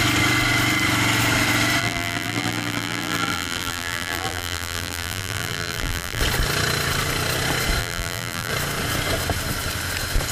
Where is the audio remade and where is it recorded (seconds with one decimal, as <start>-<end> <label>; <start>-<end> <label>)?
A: 0.0-1.8 recorded; 1.8-6.2 remade; 6.2-7.8 recorded; 7.8-8.5 remade; 8.5-10.3 recorded